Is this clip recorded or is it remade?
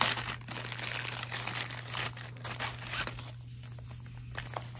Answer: recorded